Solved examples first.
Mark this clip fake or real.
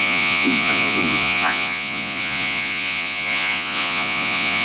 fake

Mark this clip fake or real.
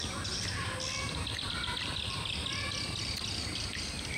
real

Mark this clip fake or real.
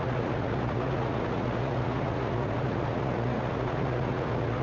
fake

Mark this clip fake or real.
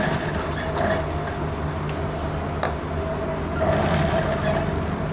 real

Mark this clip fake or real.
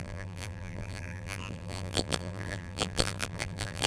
fake